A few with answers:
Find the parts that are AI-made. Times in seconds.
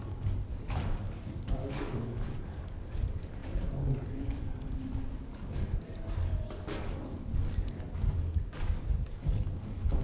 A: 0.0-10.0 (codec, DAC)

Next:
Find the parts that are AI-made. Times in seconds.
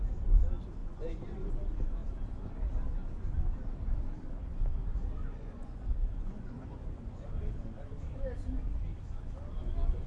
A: 0.8-1.5 (vocoder, Vocos); 5.2-7.3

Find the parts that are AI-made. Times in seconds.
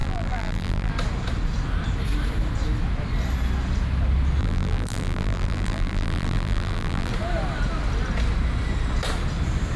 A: 0.0-0.9 (vocoder, BigVGAN v2); 4.4-7.1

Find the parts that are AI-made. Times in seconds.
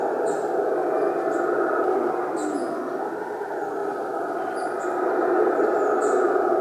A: 3.8-4.8 (vocoder, BigVGAN v2)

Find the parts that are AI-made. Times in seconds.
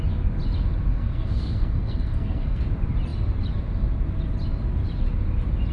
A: 0.9-2.6 (codec, SNAC)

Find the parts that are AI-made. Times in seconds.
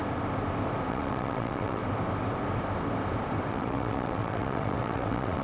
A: 0.9-1.8 (vocoder, WaveNeXt); 3.5-5.4